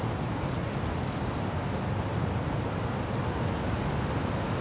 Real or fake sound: real